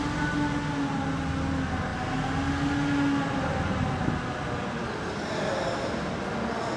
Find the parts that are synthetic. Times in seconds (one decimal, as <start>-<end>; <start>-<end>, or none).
none